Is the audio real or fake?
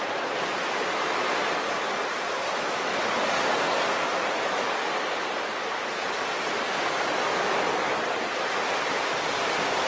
real